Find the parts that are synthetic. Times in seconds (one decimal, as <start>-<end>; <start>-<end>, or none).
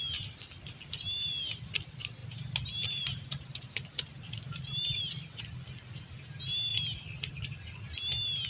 2.2-5.0